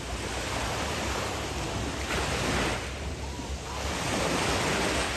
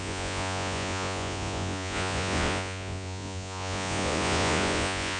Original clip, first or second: first